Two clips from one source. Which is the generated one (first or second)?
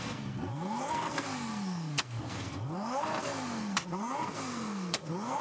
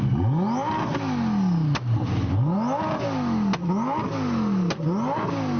first